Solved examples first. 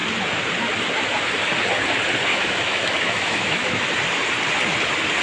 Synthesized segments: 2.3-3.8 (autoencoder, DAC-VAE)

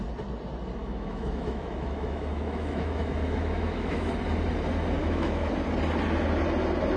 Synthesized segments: 0.8-4.1 (autoencoder, DAC-VAE); 5.0-5.5

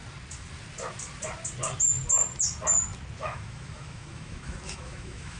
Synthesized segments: 3.2-5.4 (autoencoder, DAC-VAE)

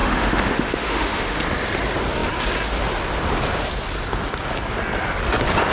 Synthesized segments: 0.0-1.4 (autoencoder, DAC-VAE)

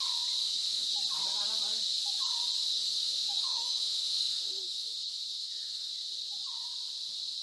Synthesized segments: 0.4-0.9 (autoencoder, DAC-VAE); 2.7-5.9

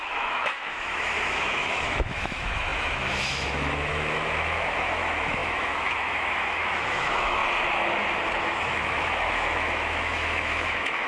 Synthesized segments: 0.0-7.4 (autoencoder, DAC-VAE); 8.4-11.1

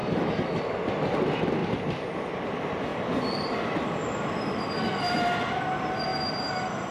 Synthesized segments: 0.0-0.6 (autoencoder, DAC-VAE)